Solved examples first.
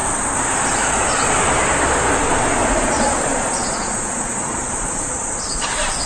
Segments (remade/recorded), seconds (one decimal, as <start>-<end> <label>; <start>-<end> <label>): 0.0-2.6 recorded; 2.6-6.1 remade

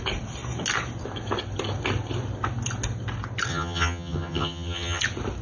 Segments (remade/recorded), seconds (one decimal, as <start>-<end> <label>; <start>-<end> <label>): 0.0-3.5 recorded; 3.5-5.0 remade; 5.0-5.4 recorded

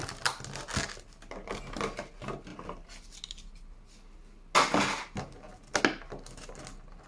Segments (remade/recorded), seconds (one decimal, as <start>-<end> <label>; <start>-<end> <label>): 0.0-7.1 recorded